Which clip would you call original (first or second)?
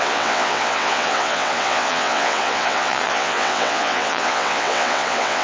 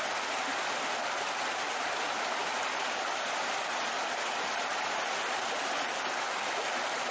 second